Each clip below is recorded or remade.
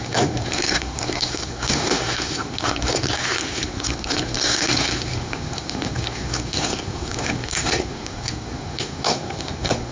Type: remade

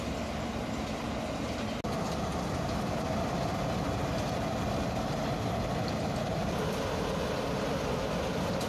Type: recorded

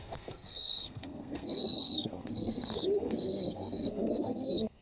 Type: remade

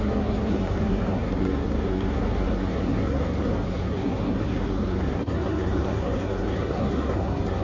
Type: remade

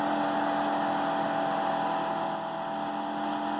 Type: recorded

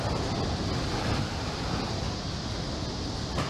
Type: recorded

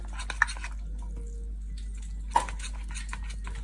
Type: recorded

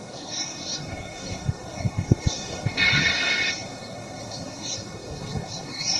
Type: remade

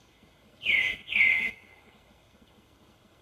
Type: remade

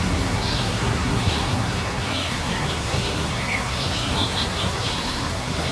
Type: remade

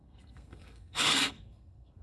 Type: remade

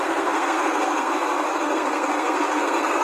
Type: remade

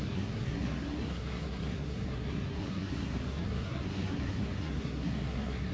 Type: remade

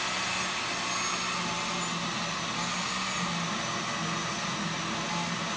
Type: recorded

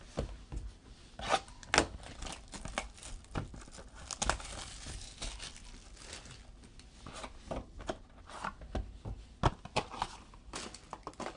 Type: recorded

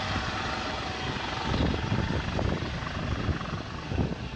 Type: recorded